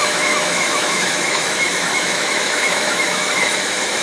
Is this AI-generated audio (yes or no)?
yes